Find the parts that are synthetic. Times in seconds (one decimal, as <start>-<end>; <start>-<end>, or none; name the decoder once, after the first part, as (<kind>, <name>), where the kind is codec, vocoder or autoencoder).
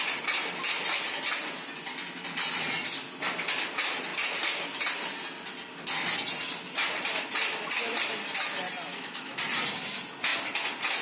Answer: 8.9-9.4 (autoencoder, DAC-VAE)